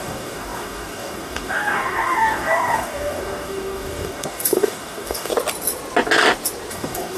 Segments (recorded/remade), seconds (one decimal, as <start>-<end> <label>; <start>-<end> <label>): 0.0-5.3 remade; 5.3-6.7 recorded; 6.7-7.2 remade